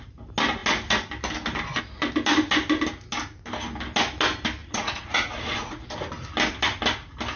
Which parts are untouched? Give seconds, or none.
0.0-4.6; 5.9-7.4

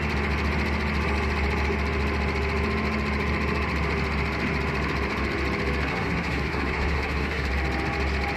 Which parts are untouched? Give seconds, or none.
0.0-5.9; 7.5-8.4

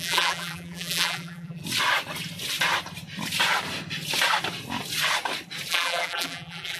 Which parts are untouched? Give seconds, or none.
1.6-5.7

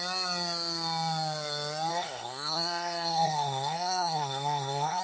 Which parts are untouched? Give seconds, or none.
0.0-1.9

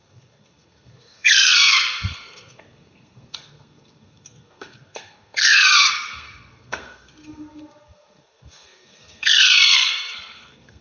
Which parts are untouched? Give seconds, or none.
none

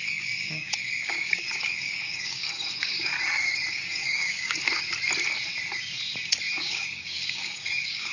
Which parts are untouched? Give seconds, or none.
3.1-3.7; 4.6-6.7

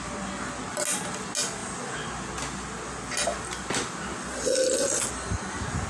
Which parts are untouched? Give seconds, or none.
0.0-5.9

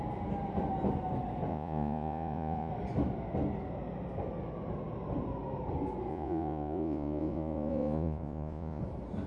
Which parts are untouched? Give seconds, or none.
0.0-1.5; 2.7-6.1; 8.8-9.3